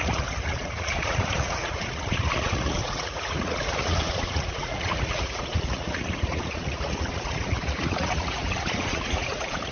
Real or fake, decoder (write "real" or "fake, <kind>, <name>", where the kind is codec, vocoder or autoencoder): fake, vocoder, Vocos